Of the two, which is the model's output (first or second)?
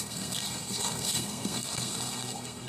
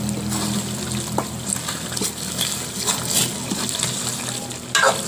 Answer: first